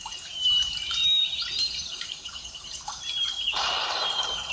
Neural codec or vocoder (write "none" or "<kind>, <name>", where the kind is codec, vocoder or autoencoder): vocoder, BigVGAN v2